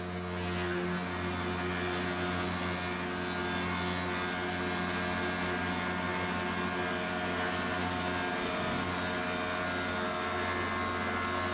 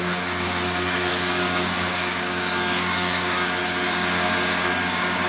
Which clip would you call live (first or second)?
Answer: first